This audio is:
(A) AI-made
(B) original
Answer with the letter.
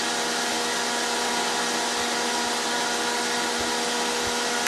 B